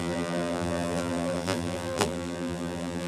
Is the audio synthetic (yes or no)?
yes